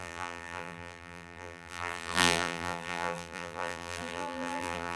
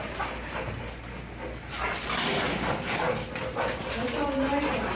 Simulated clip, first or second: first